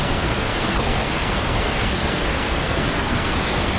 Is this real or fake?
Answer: fake